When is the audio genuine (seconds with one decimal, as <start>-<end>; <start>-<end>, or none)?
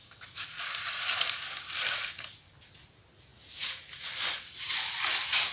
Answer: 0.8-5.5